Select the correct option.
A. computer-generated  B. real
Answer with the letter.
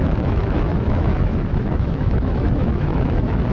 A